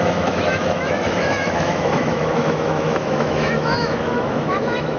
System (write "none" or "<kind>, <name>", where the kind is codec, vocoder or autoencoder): autoencoder, DAC-VAE